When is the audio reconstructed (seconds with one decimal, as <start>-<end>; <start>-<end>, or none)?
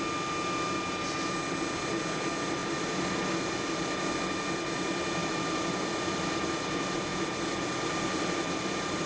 5.2-5.9; 7.1-9.1